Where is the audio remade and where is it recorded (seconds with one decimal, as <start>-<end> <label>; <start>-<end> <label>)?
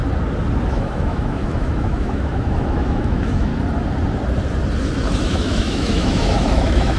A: 0.0-0.7 recorded; 0.7-3.5 remade; 3.5-5.2 recorded; 5.2-7.0 remade